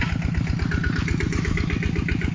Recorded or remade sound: recorded